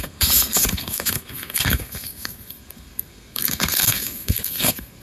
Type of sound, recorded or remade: remade